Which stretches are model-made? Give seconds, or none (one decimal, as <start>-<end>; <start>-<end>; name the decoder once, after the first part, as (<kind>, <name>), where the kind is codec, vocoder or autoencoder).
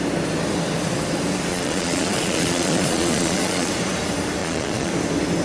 1.5-3.7 (vocoder, Vocos); 4.4-4.9